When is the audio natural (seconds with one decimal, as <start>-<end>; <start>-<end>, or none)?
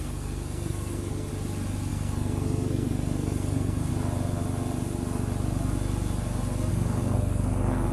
1.3-1.9; 3.9-6.7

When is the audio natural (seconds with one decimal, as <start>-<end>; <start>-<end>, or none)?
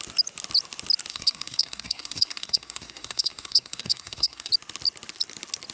0.0-1.1; 4.5-5.7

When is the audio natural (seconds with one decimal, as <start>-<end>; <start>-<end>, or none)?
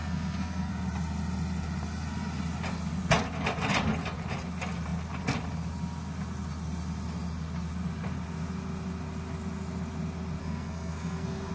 0.7-10.4